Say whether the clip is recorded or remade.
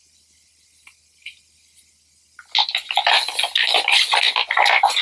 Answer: recorded